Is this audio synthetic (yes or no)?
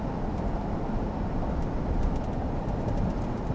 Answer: no